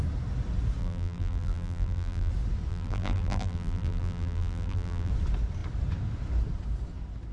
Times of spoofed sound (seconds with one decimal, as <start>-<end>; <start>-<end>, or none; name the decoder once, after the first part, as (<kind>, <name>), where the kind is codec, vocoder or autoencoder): 0.8-2.3 (vocoder, BigVGAN v2); 2.7-5.1